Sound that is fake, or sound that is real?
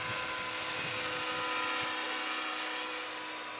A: real